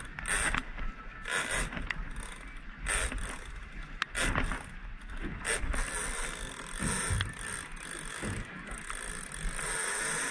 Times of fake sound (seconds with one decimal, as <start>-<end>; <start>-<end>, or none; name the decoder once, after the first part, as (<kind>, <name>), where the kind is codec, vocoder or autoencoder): 8.1-8.9 (codec, DAC)